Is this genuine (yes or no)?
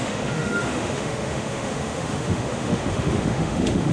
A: no